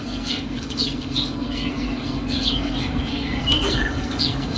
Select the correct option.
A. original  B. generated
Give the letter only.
B